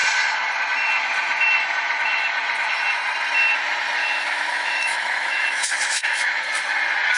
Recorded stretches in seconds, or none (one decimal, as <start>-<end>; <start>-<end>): 0.0-4.0; 6.4-7.2